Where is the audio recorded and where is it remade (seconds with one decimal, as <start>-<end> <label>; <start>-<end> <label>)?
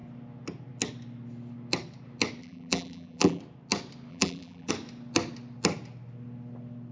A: 0.0-2.4 recorded; 2.4-3.4 remade; 3.4-4.1 recorded; 4.1-4.7 remade; 4.7-6.9 recorded